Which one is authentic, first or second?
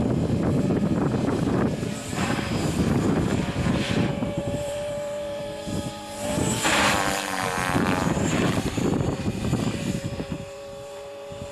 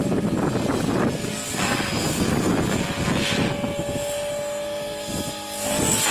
second